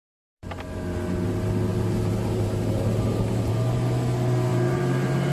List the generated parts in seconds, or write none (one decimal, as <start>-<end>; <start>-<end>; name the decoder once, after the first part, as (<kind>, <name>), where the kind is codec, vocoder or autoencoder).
1.7-3.5 (vocoder, BigVGAN v2); 4.5-5.3